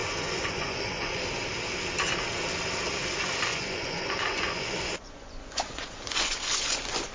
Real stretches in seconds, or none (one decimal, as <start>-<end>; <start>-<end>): 1.2-3.5